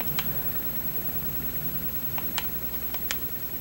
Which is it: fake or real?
real